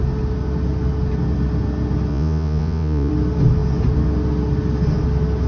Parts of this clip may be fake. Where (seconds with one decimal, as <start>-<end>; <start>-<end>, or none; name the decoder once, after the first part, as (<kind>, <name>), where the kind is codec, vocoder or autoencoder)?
2.1-3.1 (vocoder, Vocos)